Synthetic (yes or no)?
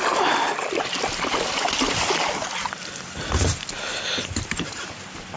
no